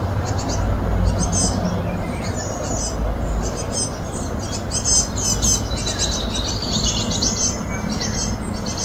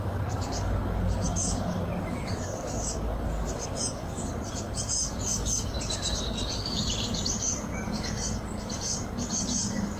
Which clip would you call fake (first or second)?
second